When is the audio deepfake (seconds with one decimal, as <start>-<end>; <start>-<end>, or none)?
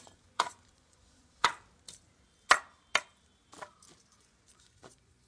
0.0-1.5; 4.1-5.3